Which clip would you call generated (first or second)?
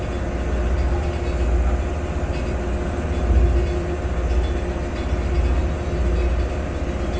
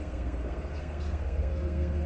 second